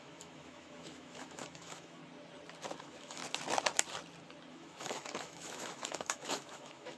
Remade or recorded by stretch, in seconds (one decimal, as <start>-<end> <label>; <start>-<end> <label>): 0.0-2.0 remade; 2.0-2.8 recorded; 2.8-3.2 remade; 3.2-4.5 recorded; 4.5-7.0 remade